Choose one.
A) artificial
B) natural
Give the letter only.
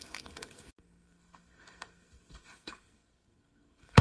A